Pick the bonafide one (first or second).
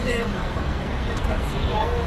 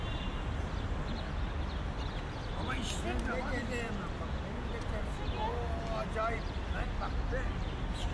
second